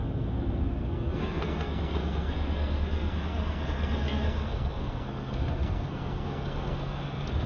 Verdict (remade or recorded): remade